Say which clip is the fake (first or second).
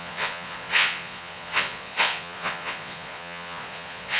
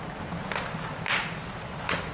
first